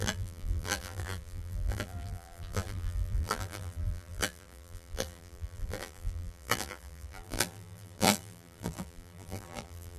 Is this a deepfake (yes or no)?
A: yes